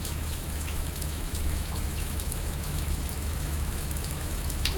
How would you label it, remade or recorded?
remade